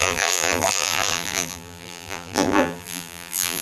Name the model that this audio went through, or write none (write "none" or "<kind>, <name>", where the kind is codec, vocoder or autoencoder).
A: vocoder, BigVGAN v2